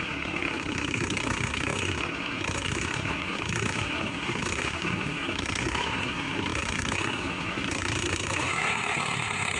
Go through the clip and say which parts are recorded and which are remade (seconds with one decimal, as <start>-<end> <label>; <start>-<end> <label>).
0.0-9.6 remade